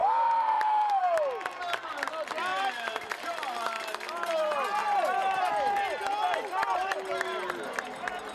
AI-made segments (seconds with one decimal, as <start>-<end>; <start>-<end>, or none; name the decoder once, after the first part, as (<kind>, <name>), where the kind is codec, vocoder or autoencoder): 0.0-1.0 (vocoder, BigVGAN v2); 2.5-3.1; 4.8-5.5